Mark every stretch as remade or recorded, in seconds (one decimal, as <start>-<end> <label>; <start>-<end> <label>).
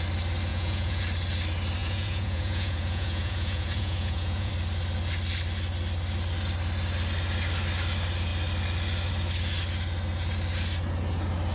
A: 0.0-0.5 recorded; 0.5-1.0 remade; 1.0-1.8 recorded; 1.8-4.5 remade; 4.5-11.5 recorded